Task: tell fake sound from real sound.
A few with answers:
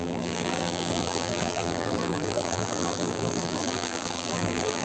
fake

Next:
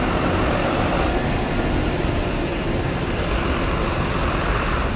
real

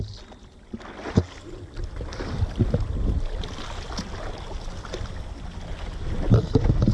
real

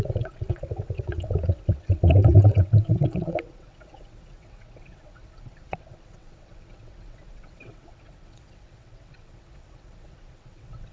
fake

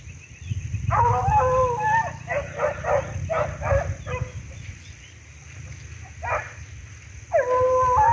real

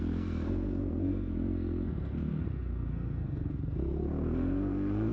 fake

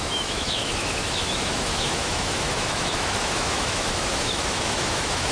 fake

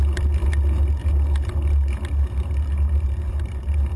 real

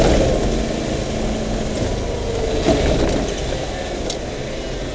real